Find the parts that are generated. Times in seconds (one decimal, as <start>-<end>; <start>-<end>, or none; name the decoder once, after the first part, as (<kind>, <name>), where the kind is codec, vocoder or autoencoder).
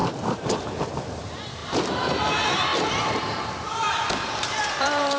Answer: 0.0-5.2 (vocoder, BigVGAN v2)